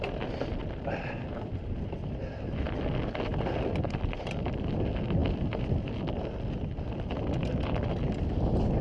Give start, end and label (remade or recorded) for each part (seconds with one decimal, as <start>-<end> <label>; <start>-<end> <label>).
0.0-8.8 recorded